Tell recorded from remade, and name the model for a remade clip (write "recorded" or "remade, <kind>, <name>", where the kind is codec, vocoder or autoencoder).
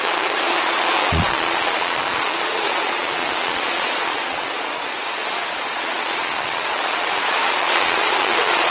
remade, vocoder, Vocos